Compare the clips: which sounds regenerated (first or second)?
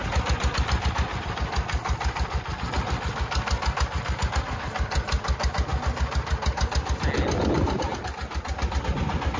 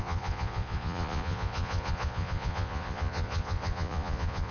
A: second